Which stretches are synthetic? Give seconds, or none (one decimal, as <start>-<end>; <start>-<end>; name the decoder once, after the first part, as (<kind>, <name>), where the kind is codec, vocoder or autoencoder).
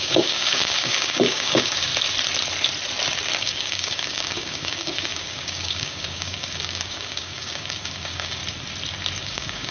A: 0.0-1.9 (codec, DAC); 3.4-8.4; 9.2-9.7